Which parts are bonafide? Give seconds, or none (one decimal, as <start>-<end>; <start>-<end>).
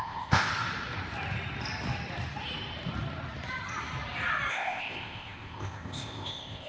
0.5-4.5